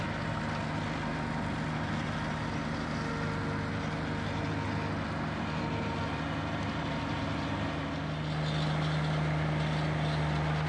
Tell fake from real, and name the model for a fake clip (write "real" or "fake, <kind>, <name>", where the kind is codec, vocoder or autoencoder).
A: real